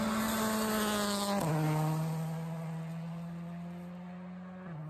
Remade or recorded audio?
recorded